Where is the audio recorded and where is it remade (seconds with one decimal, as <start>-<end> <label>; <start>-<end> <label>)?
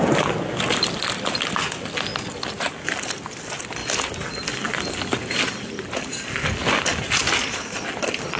0.0-8.4 recorded